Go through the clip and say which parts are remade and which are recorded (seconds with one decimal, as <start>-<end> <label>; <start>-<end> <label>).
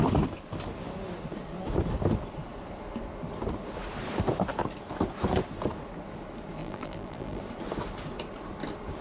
0.0-6.6 recorded; 6.6-7.4 remade; 7.4-9.0 recorded